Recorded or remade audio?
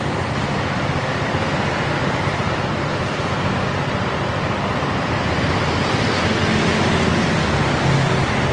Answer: recorded